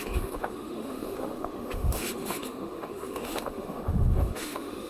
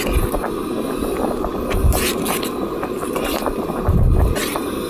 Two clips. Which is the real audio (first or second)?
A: second